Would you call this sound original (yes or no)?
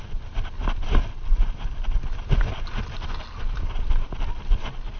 yes